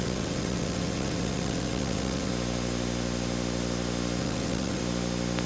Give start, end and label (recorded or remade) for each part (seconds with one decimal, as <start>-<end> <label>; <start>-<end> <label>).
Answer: 0.0-2.3 remade; 2.3-4.2 recorded; 4.2-4.8 remade; 4.8-5.5 recorded